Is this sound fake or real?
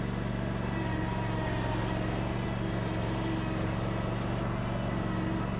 real